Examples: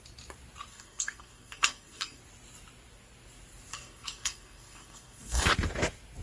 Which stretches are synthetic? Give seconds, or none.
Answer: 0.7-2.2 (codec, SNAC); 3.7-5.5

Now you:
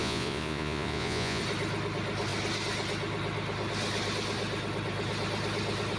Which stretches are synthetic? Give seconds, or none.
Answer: 0.0-1.4 (vocoder, Vocos)

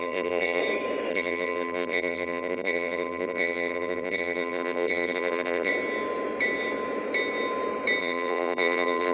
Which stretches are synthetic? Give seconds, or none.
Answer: 0.0-0.6 (vocoder, BigVGAN v2); 1.1-5.7; 8.0-9.1

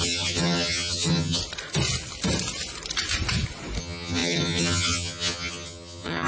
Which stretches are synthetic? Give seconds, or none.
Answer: 0.0-1.4 (vocoder, HiFi-GAN); 3.8-6.3